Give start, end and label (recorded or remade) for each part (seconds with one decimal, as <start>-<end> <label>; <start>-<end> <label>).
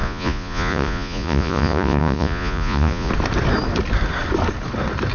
0.0-3.1 remade; 3.1-5.1 recorded